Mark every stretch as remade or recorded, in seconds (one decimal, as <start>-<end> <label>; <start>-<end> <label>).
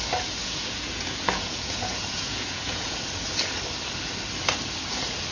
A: 0.0-0.4 recorded; 0.4-3.0 remade; 3.0-5.3 recorded